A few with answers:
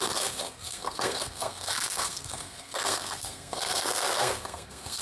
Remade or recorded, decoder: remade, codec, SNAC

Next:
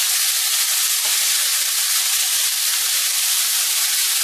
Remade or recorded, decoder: recorded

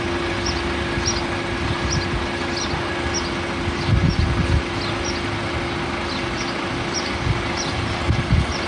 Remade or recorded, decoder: recorded